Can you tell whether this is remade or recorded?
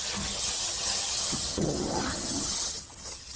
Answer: remade